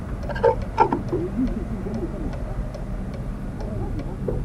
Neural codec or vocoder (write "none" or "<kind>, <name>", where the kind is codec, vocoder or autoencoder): none